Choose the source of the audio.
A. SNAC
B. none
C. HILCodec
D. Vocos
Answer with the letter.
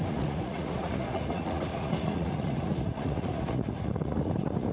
D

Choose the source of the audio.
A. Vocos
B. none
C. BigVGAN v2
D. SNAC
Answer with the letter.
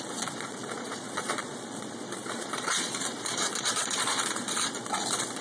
A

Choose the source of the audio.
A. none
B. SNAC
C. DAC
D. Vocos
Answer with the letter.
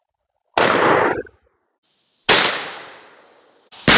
A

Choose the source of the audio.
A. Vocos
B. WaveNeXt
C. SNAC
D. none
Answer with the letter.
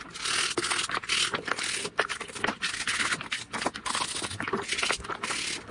D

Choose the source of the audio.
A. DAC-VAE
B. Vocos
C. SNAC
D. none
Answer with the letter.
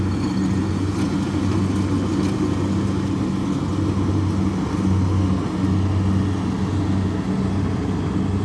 D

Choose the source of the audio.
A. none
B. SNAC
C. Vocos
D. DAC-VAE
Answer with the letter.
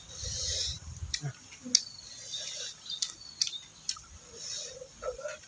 A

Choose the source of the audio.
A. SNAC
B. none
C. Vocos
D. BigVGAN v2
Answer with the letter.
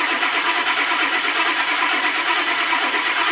C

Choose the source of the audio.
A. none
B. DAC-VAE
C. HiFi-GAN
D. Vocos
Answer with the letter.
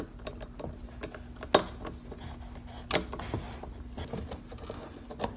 A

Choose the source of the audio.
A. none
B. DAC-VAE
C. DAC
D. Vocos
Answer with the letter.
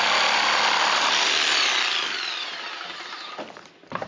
A